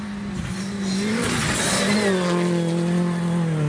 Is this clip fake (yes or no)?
no